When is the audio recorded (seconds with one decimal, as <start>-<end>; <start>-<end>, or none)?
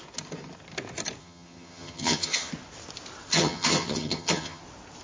0.0-1.2; 2.5-3.3; 4.6-5.0